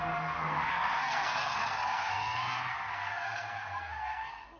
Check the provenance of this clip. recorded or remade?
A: remade